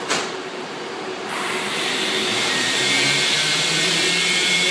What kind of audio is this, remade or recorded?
remade